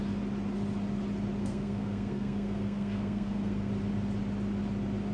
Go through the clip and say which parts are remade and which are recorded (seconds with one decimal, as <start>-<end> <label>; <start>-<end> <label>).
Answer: 0.0-1.4 recorded; 1.4-3.7 remade; 3.7-5.1 recorded